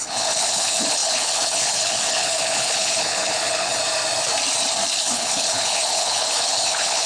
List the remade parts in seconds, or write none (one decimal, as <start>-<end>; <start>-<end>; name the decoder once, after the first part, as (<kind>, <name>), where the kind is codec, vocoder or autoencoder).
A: 0.0-3.8 (codec, HILCodec); 4.9-7.1